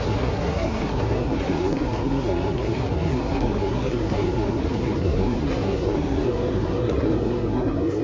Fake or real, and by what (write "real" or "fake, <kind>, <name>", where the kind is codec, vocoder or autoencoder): fake, codec, SNAC